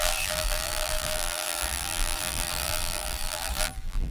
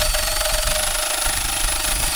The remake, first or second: first